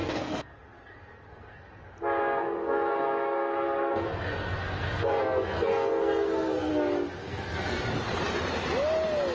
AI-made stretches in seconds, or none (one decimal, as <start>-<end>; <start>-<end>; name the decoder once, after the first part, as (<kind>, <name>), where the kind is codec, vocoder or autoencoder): 0.0-1.8 (codec, SNAC); 2.2-6.7; 7.2-7.8